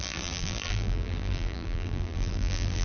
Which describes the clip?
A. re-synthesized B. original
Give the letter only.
A